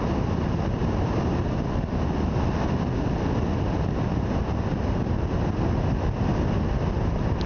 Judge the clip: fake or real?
real